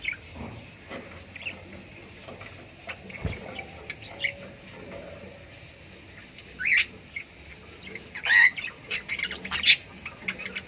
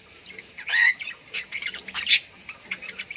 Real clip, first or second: first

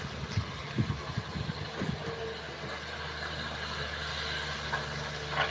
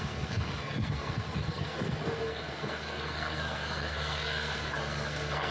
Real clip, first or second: first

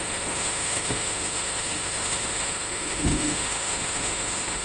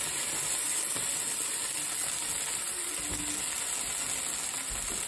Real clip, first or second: second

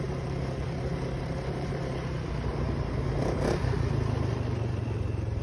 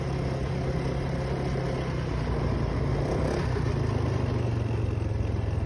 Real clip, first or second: second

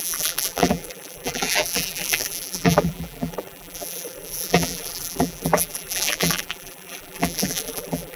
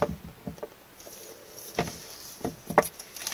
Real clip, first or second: second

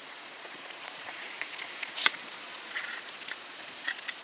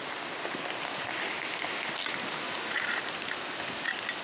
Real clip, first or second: second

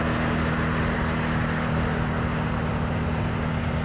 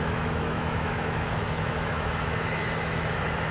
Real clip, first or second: first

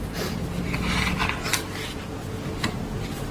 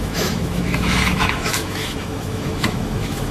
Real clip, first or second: first